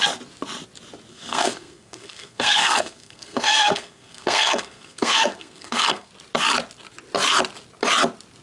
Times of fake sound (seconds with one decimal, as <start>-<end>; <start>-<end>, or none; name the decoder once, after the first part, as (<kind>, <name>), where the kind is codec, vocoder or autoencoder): 1.1-6.1 (codec, SNAC)